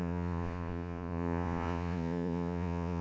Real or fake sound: fake